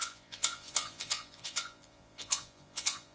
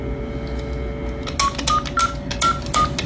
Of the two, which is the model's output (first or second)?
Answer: first